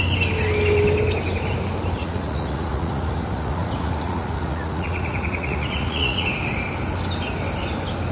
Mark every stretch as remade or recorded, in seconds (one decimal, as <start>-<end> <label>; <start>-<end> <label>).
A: 0.0-2.0 recorded; 2.0-6.3 remade; 6.3-8.1 recorded

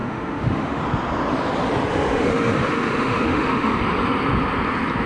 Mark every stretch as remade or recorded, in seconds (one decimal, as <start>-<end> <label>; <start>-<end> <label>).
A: 0.0-0.8 remade; 0.8-1.9 recorded; 1.9-3.8 remade; 3.8-5.1 recorded

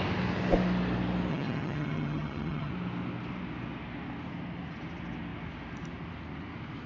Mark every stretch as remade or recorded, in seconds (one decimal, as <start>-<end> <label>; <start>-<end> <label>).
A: 0.0-1.3 recorded; 1.3-2.7 remade; 2.7-6.9 recorded

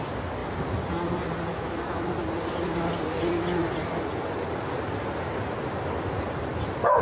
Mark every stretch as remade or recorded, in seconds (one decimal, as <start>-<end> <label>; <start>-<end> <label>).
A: 0.0-1.5 recorded; 1.5-2.1 remade; 2.1-7.0 recorded

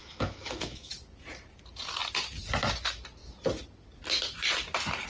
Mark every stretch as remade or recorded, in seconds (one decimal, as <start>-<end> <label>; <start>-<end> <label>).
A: 0.0-0.9 remade; 0.9-5.1 recorded

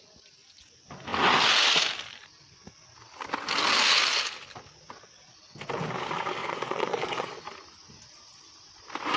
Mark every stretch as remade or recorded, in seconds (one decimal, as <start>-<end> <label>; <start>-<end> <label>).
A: 0.0-6.4 recorded; 6.4-7.4 remade; 7.4-9.2 recorded

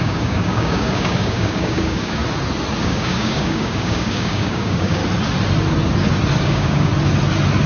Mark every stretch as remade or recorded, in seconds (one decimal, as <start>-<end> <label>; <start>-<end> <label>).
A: 0.0-2.2 remade; 2.2-2.8 recorded; 2.8-5.0 remade; 5.0-6.4 recorded; 6.4-6.9 remade; 6.9-7.7 recorded

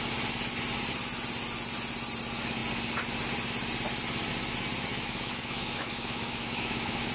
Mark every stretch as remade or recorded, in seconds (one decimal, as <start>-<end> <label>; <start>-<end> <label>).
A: 0.0-4.9 recorded; 4.9-7.1 remade